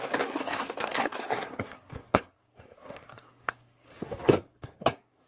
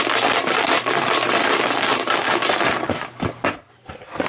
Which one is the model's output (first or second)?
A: first